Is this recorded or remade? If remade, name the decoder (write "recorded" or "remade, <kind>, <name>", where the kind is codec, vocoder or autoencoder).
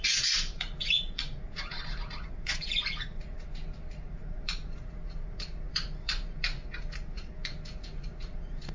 remade, vocoder, Vocos